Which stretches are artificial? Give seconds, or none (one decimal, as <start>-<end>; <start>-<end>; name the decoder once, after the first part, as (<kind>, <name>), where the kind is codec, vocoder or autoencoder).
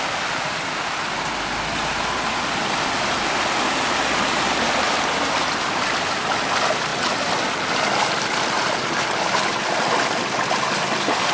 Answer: none